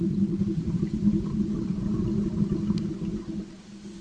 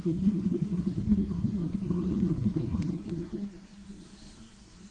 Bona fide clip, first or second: first